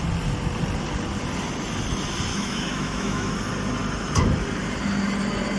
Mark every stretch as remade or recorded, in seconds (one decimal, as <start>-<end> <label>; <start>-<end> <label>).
0.0-2.3 recorded; 2.3-3.3 remade; 3.3-5.6 recorded